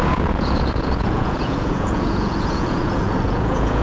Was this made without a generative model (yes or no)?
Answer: no